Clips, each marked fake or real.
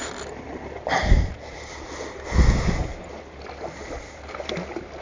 real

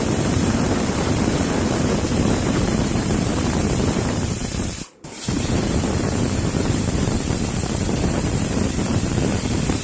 fake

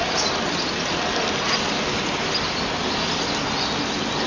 real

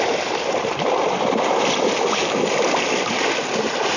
real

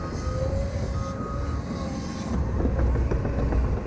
real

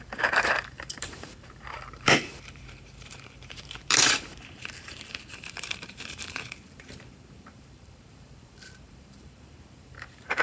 fake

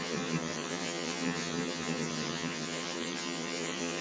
fake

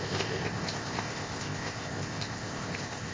fake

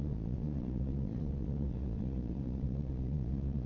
fake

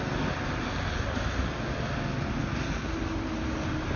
real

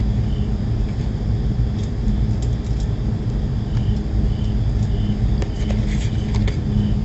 real